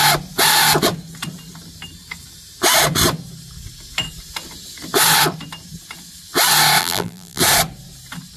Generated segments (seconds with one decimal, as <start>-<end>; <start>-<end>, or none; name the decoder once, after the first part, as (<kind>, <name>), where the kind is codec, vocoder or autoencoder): 6.8-7.4 (vocoder, BigVGAN v2)